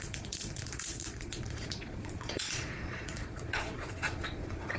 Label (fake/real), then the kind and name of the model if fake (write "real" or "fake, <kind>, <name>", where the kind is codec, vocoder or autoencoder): fake, vocoder, Vocos